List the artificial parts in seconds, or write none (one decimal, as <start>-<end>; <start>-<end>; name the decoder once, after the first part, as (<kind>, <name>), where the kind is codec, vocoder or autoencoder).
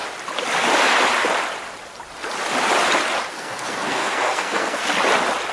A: 3.3-4.8 (codec, SNAC)